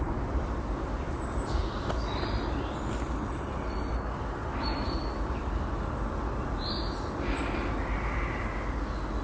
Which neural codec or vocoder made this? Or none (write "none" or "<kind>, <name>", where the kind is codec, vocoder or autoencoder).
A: none